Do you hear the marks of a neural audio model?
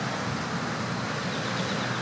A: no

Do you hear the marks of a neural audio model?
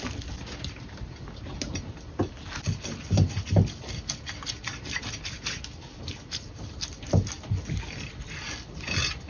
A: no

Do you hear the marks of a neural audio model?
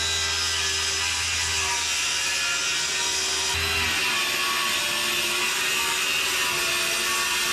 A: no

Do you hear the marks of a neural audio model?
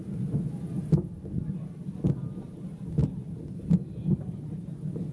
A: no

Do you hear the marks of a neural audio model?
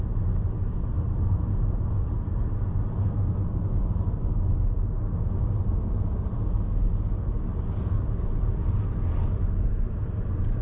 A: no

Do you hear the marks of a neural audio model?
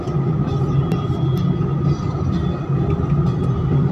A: no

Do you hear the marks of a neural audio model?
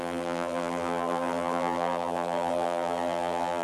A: yes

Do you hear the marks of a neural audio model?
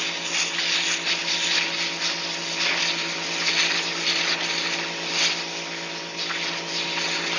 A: no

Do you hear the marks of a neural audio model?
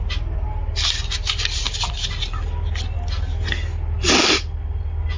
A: no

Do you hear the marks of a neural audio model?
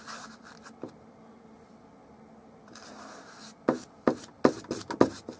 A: no